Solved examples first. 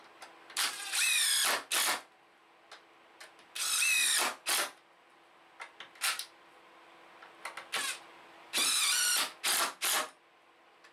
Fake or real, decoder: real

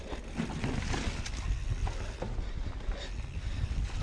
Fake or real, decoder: real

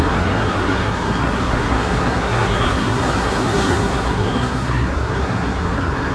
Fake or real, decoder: fake, codec, SNAC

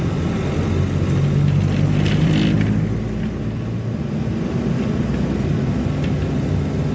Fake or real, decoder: real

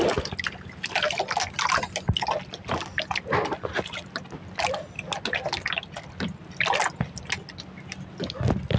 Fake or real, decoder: real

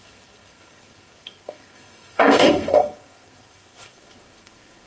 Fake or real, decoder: fake, codec, SNAC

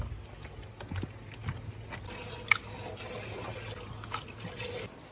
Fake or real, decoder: real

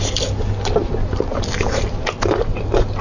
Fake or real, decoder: real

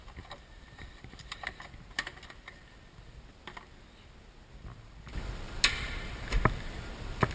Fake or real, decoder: real